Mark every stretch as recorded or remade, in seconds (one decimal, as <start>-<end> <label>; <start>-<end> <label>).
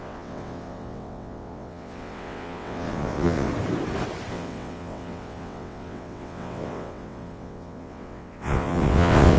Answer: 0.0-3.5 remade; 3.5-4.3 recorded; 4.3-9.4 remade